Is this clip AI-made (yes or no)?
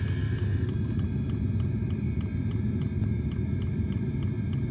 no